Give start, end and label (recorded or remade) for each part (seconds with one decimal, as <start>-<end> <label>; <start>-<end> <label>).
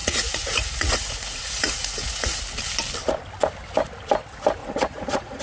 0.0-2.4 remade; 2.4-4.6 recorded; 4.6-5.4 remade